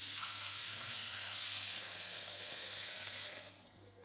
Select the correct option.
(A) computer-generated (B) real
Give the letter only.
A